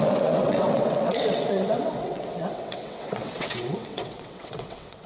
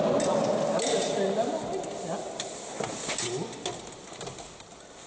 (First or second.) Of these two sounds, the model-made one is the first